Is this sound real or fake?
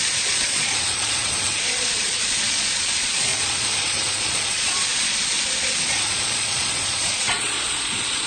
fake